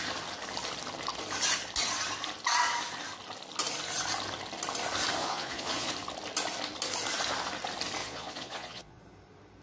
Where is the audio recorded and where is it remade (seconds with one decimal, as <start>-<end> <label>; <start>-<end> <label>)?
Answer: 0.0-5.2 recorded; 5.2-5.9 remade; 5.9-8.0 recorded; 8.0-9.0 remade; 9.0-9.6 recorded